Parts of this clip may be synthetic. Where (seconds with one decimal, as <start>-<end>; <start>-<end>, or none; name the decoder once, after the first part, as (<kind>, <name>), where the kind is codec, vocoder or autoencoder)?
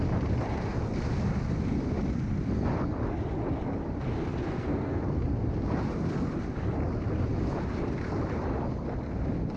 4.4-5.0 (codec, SNAC)